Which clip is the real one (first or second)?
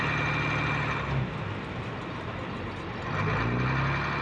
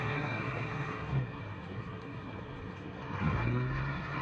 first